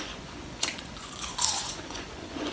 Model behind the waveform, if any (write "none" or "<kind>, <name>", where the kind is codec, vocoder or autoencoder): vocoder, Vocos